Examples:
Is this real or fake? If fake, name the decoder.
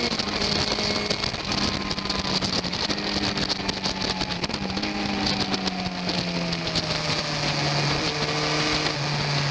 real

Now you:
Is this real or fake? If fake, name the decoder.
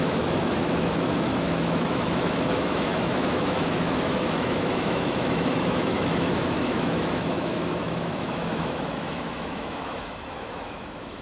fake, autoencoder, DAC-VAE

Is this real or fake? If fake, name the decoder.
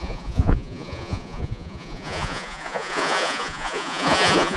fake, vocoder, Vocos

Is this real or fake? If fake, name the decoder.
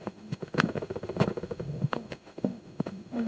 fake, autoencoder, DAC-VAE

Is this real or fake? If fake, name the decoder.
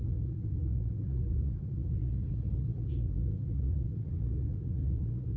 fake, vocoder, Vocos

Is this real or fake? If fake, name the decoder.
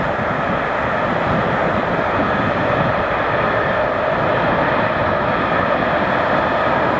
real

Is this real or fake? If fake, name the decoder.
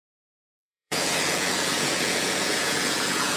fake, vocoder, Vocos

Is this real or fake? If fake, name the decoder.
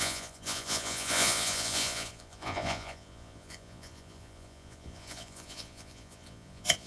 fake, vocoder, Vocos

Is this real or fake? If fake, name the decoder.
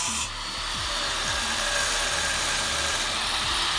real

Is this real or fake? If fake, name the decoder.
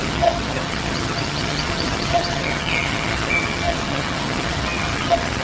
fake, vocoder, HiFi-GAN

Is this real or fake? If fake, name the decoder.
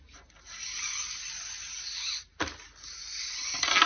real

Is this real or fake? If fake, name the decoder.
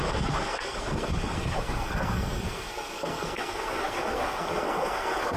fake, codec, SNAC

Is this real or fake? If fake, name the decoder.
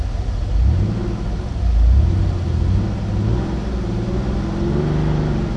real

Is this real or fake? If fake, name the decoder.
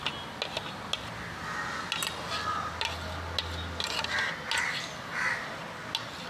real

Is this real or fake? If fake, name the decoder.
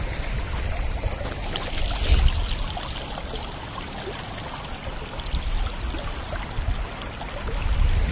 real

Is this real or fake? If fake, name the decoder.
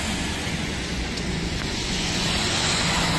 fake, vocoder, Vocos